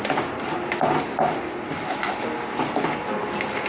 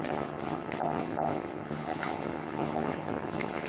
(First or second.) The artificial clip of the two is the second